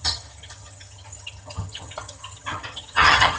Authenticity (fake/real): fake